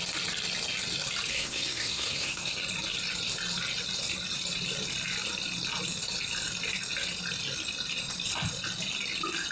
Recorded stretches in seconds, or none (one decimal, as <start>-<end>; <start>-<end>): 0.0-1.3; 2.6-9.5